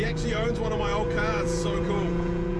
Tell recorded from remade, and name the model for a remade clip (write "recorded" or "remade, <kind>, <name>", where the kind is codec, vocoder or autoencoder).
remade, vocoder, Vocos